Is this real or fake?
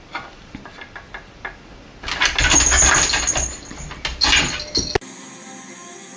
real